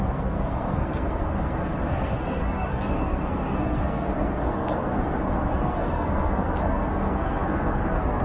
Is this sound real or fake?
fake